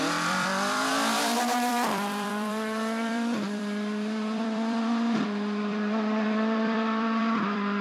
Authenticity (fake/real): fake